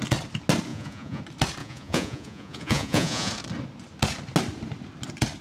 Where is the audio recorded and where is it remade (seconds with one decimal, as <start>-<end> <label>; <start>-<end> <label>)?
0.0-0.7 recorded; 0.7-1.2 remade; 1.2-1.6 recorded; 1.6-3.3 remade; 3.3-5.4 recorded